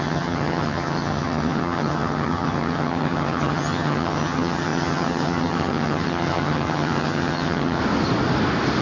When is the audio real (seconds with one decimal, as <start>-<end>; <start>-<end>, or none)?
7.8-8.8